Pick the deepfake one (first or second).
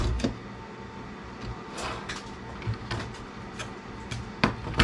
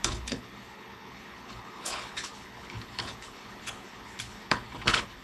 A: second